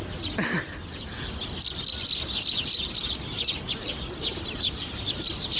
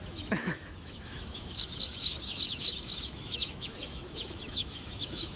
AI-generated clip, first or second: second